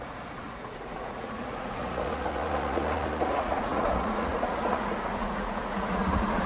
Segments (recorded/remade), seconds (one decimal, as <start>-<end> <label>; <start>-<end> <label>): 0.0-6.5 remade